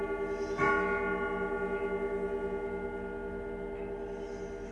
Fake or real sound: real